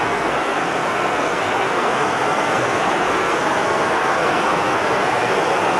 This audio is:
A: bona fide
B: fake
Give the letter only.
B